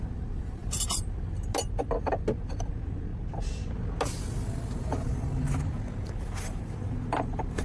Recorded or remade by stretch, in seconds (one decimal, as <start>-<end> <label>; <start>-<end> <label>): 0.0-0.6 remade; 0.6-2.7 recorded; 2.7-3.1 remade; 3.1-6.2 recorded; 6.2-7.6 remade